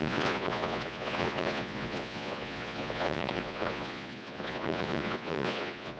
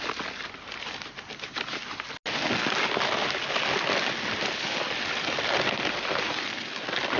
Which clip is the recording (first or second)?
second